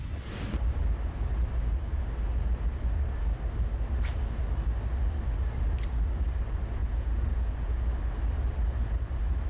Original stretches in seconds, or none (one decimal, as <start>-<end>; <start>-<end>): 0.0-6.8; 7.8-9.5